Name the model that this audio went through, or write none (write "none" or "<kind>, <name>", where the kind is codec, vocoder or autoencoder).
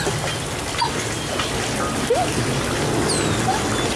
none